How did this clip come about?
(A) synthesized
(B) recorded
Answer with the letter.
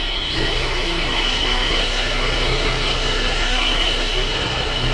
A